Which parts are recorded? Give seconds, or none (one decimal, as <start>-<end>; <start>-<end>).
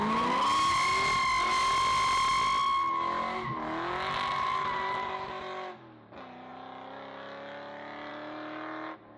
0.0-9.2